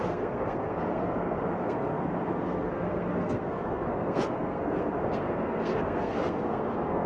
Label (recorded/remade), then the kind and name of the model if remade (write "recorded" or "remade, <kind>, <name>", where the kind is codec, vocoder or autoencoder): remade, codec, SNAC